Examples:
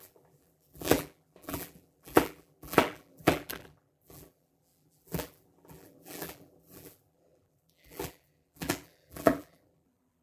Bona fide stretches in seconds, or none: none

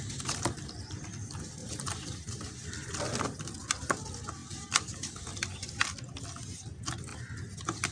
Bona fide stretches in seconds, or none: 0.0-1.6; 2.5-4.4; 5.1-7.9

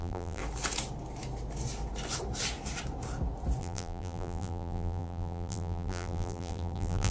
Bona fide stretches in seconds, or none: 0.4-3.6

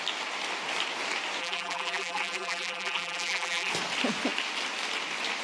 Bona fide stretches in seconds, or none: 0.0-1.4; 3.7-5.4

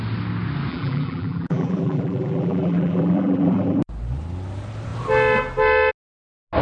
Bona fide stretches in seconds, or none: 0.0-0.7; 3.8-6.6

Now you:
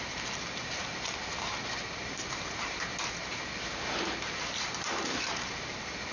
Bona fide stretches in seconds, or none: 0.8-4.3

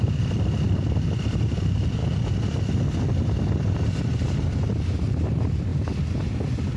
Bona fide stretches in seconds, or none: 2.0-3.2; 5.7-6.8

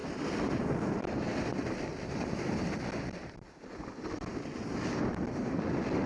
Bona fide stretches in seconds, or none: 3.7-6.1